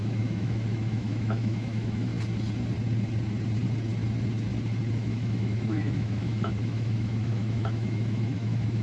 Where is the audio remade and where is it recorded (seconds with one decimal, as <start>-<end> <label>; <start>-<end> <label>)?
0.0-2.1 remade; 2.1-4.9 recorded; 4.9-8.8 remade